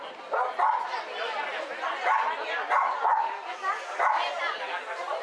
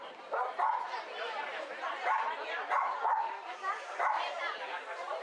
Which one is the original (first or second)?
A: first